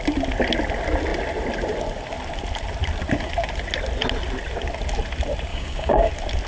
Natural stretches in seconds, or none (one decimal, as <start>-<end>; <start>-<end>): 0.0-5.5; 6.1-6.5